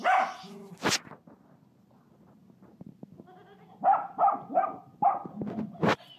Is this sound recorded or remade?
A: recorded